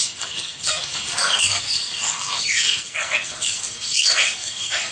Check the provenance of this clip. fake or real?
fake